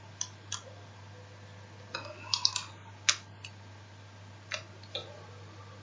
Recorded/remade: recorded